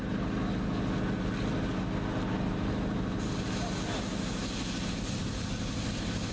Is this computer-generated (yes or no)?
no